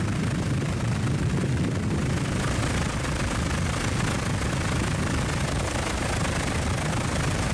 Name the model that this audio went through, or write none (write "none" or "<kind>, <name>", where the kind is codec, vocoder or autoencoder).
none